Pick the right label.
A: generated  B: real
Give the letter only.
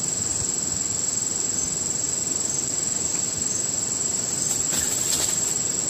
A